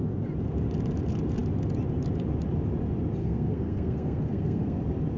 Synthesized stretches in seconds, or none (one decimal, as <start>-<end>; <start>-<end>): 3.2-4.8